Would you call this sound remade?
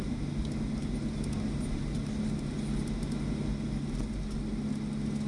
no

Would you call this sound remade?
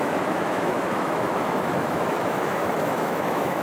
yes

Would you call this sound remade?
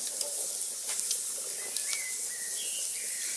no